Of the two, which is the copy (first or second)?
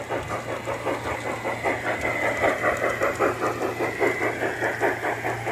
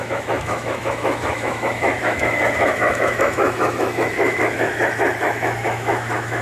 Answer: second